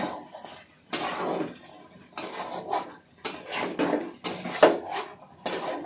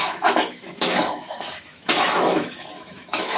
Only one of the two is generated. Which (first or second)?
second